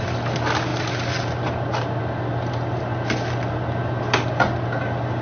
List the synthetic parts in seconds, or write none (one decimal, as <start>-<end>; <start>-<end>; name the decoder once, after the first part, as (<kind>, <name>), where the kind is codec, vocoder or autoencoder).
none